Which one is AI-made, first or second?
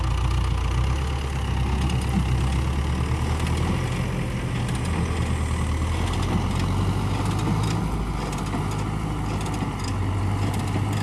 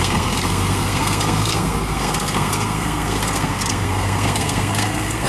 second